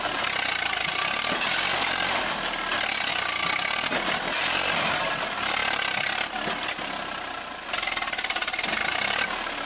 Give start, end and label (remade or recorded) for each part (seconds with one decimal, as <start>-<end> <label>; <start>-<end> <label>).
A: 0.0-9.7 recorded